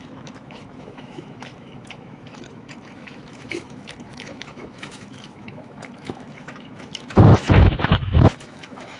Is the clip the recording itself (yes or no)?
no